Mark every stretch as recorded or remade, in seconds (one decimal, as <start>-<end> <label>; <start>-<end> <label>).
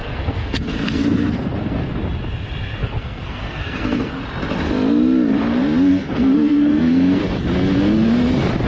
0.0-2.0 remade; 2.0-2.8 recorded; 2.8-4.2 remade; 4.2-5.9 recorded; 5.9-7.2 remade; 7.2-8.7 recorded